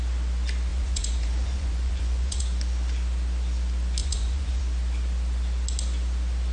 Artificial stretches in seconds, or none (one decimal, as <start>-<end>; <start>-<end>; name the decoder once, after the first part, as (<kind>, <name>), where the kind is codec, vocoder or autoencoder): 0.7-2.4 (vocoder, Vocos); 4.0-4.6